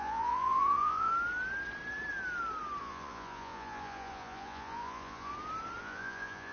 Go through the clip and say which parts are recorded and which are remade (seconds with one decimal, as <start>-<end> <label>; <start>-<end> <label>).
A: 0.0-1.1 remade; 1.1-2.8 recorded; 2.8-5.3 remade; 5.3-5.8 recorded; 5.8-6.5 remade